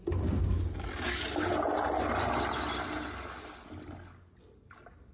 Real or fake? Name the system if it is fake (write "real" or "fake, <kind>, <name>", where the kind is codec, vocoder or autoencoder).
real